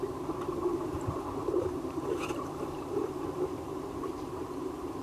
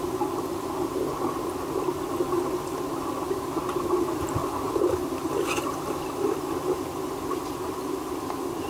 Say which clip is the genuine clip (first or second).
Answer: second